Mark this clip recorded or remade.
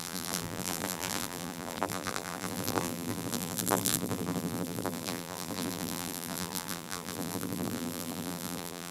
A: remade